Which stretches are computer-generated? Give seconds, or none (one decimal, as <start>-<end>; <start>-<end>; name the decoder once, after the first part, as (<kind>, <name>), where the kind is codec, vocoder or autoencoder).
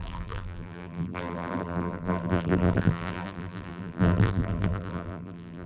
0.0-5.7 (vocoder, BigVGAN v2)